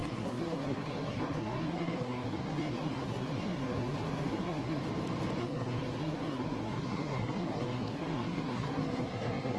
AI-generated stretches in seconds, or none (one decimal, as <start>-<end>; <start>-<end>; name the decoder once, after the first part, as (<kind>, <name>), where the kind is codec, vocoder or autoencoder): 0.0-4.8 (codec, SNAC); 5.4-9.6